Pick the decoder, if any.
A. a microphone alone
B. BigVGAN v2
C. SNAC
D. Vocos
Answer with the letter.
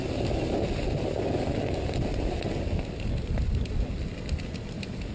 A